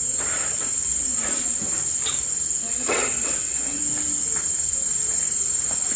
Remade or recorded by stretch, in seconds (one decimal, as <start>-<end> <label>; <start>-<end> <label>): 0.0-2.6 recorded; 2.6-3.8 remade; 3.8-6.0 recorded